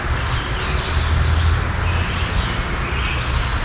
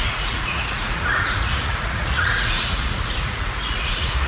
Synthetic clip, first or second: second